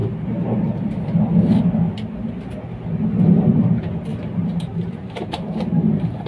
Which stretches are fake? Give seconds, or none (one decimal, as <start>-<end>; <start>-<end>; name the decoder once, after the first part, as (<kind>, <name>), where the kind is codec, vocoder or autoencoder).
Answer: 0.0-1.0 (vocoder, BigVGAN v2); 4.1-6.3